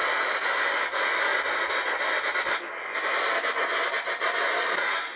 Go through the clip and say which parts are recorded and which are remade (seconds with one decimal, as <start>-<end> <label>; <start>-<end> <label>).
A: 0.0-5.2 recorded